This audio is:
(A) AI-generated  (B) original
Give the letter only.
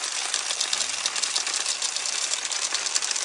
B